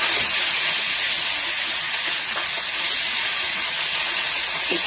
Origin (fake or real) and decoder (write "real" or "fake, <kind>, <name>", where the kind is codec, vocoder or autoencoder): fake, vocoder, Vocos